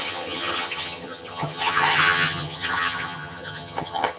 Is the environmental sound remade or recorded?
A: remade